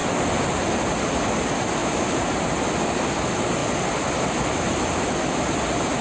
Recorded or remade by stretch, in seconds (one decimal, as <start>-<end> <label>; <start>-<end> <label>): 0.0-1.8 recorded; 1.8-2.4 remade; 2.4-6.0 recorded